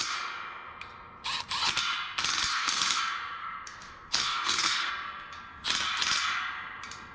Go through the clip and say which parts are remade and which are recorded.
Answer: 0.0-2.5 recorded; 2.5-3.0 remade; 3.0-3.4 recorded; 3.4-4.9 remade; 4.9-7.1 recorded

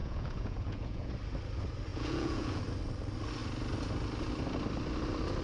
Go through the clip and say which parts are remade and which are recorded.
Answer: 0.0-1.1 remade; 1.1-1.9 recorded; 1.9-2.6 remade; 2.6-5.4 recorded

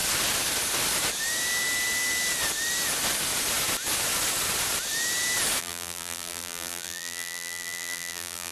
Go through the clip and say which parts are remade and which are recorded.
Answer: 0.0-5.6 recorded; 5.6-8.5 remade

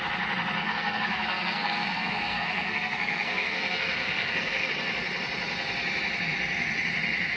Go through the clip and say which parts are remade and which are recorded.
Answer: 0.0-0.6 recorded; 0.6-4.7 remade; 4.7-7.4 recorded

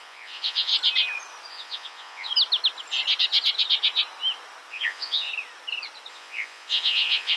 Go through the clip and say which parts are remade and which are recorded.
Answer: 0.0-0.7 remade; 0.7-1.5 recorded; 1.5-2.3 remade; 2.3-4.7 recorded; 4.7-5.3 remade; 5.3-6.1 recorded; 6.1-7.4 remade

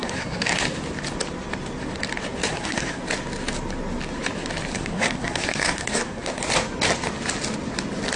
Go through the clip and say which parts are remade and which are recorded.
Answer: 0.0-0.5 remade; 0.5-2.5 recorded; 2.5-3.0 remade; 3.0-4.7 recorded; 4.7-6.4 remade; 6.4-8.2 recorded

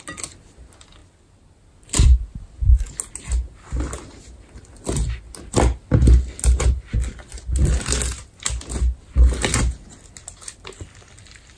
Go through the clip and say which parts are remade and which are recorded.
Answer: 0.0-11.6 recorded